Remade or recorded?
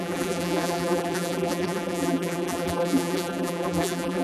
remade